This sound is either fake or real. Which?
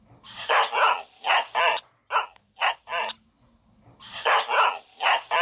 real